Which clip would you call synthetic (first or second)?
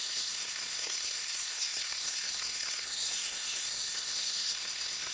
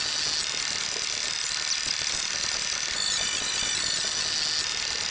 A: first